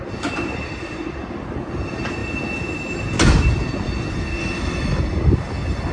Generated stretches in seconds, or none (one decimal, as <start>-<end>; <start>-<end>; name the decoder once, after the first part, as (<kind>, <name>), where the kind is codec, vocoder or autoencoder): 4.4-5.0 (autoencoder, DAC-VAE)